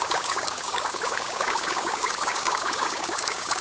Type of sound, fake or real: fake